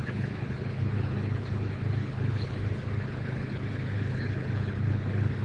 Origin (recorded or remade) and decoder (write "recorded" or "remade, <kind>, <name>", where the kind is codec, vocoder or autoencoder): remade, codec, HILCodec